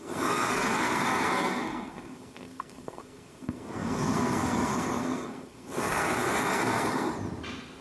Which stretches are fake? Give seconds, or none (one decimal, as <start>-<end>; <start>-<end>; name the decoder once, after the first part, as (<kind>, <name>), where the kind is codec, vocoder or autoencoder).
0.0-7.1 (codec, SNAC)